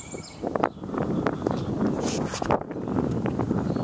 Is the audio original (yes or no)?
yes